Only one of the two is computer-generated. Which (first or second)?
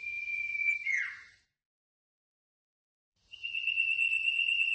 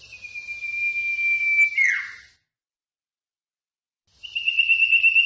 first